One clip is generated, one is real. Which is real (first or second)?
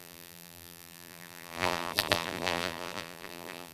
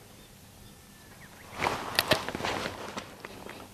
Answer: second